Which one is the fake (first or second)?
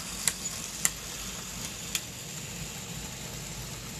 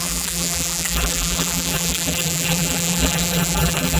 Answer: second